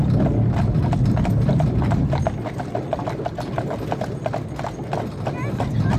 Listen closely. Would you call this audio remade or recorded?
recorded